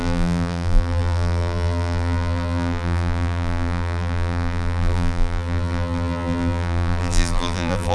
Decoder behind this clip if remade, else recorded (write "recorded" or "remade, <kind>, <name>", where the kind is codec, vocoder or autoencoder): remade, vocoder, BigVGAN v2